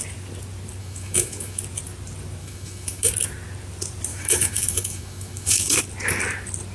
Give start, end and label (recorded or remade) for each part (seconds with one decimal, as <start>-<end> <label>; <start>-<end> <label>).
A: 0.0-0.8 recorded; 0.8-1.6 remade; 1.6-2.4 recorded; 2.4-3.1 remade; 3.1-4.1 recorded; 4.1-5.8 remade; 5.8-6.7 recorded